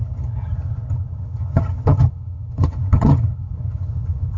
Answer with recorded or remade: remade